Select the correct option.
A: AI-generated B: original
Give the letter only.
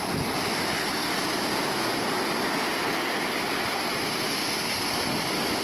B